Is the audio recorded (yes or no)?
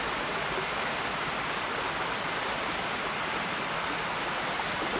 yes